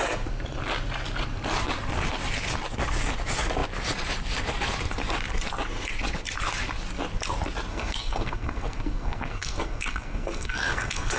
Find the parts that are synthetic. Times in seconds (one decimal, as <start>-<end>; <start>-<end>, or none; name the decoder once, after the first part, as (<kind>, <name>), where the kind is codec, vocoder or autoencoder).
7.7-11.2 (codec, SNAC)